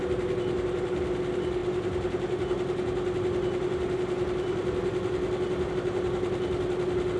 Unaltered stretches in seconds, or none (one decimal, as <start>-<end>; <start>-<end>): 0.0-7.2